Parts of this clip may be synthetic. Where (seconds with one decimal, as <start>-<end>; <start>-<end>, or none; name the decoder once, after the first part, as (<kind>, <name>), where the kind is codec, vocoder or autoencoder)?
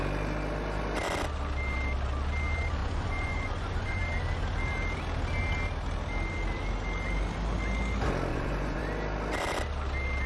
2.8-4.0 (vocoder, Vocos); 8.3-8.8